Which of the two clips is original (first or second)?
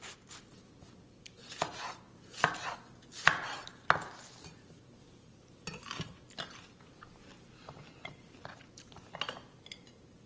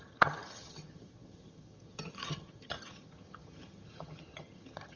first